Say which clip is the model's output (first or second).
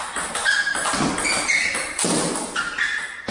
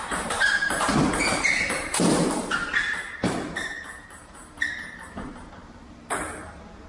second